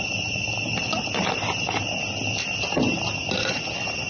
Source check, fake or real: real